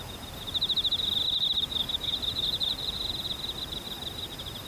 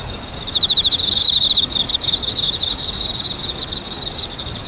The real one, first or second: first